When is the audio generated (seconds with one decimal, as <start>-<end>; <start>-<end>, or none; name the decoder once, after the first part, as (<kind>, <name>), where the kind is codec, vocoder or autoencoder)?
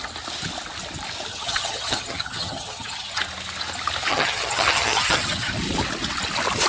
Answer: 1.3-3.2 (vocoder, HiFi-GAN); 4.1-5.5